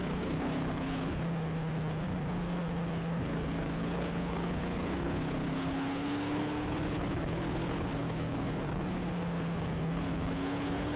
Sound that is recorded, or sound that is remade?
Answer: remade